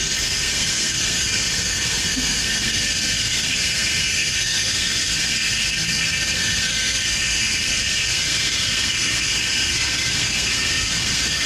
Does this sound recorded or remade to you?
remade